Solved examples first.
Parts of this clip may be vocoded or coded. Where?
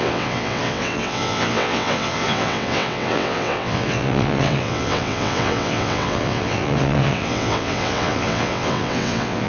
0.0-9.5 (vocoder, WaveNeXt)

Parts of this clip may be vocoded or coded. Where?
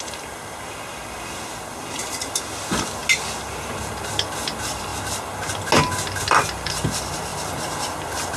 0.0-3.0 (vocoder, BigVGAN v2); 3.7-4.9; 6.2-7.3; 8.0-8.4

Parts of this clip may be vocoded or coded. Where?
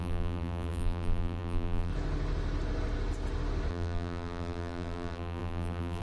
0.0-1.9 (vocoder, BigVGAN v2); 3.7-6.0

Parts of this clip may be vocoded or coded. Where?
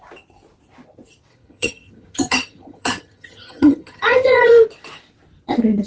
1.3-4.5 (vocoder, HiFi-GAN)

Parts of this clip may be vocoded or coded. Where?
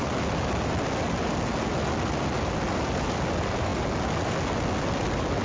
none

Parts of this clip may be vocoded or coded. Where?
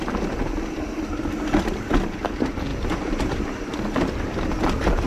2.7-3.2 (vocoder, BigVGAN v2)